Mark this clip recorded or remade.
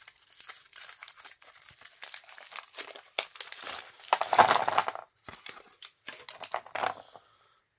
recorded